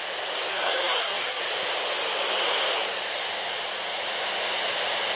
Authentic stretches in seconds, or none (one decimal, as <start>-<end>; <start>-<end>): 0.0-0.5; 1.4-5.2